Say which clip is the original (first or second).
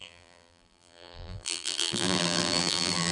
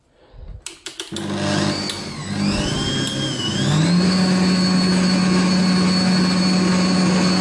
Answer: second